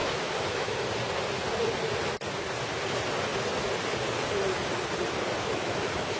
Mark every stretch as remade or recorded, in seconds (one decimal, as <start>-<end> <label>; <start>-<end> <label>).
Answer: 0.0-0.8 remade; 0.8-5.4 recorded; 5.4-6.2 remade